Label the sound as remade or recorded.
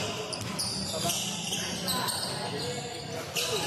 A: recorded